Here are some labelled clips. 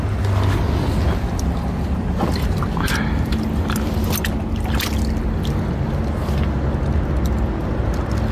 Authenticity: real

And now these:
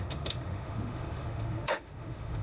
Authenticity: fake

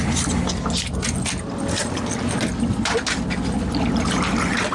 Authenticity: real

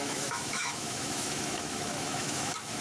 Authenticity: fake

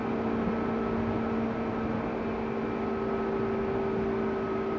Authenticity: real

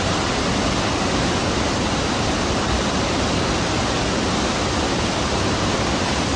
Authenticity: real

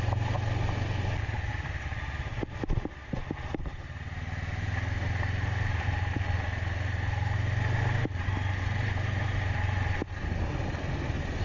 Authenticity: real